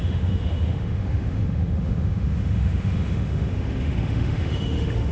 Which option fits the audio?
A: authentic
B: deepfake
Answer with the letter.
B